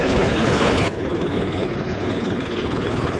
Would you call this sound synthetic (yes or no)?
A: yes